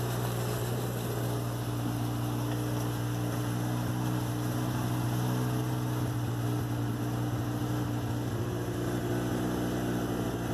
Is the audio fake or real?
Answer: real